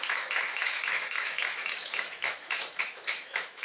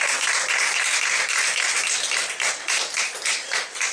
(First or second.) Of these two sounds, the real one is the second